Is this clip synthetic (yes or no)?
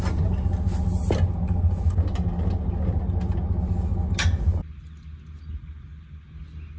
no